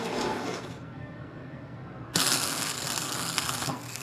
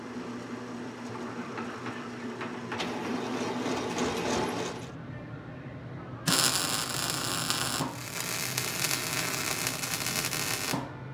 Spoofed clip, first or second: first